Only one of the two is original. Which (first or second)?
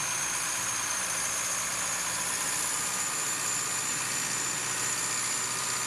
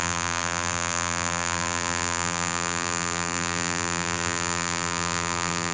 first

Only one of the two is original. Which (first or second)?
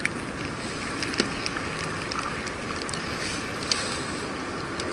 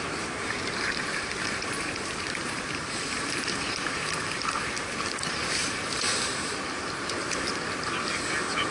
first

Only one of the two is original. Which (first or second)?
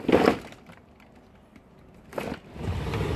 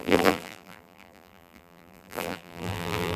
first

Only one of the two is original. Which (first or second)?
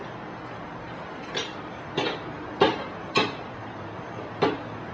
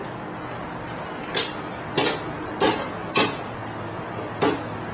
second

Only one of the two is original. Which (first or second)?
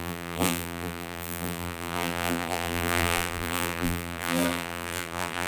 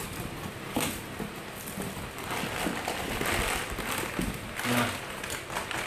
second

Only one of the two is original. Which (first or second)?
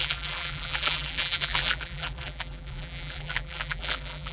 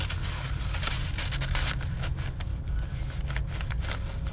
second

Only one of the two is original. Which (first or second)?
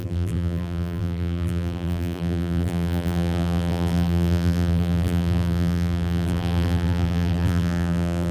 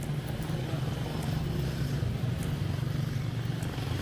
second